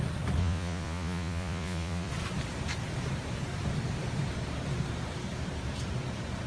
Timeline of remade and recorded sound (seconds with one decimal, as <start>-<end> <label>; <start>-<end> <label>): 0.0-0.4 recorded; 0.4-2.1 remade; 2.1-6.5 recorded